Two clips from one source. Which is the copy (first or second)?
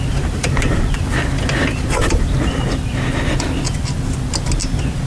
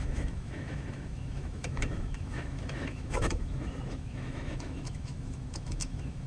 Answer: second